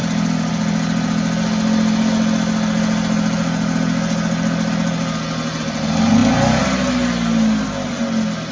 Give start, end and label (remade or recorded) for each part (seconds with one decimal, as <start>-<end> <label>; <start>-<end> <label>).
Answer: 0.0-8.5 recorded